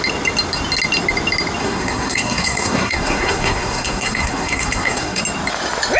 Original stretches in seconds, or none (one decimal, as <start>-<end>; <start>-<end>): 0.0-1.6; 5.2-6.0

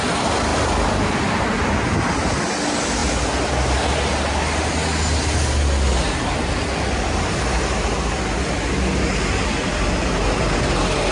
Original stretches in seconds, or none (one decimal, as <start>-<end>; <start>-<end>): 0.0-11.1

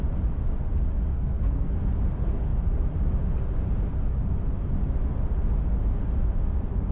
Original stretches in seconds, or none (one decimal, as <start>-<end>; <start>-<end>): 0.0-1.1; 1.7-6.9

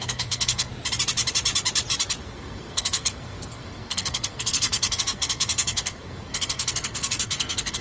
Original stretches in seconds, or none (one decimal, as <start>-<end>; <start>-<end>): 0.7-2.2

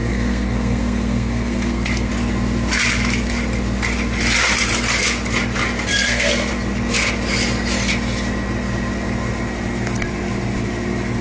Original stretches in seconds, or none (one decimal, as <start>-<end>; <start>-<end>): 2.1-5.9; 6.5-11.2

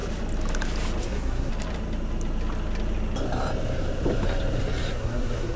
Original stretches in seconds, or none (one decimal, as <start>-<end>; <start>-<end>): 0.0-1.0; 1.5-4.9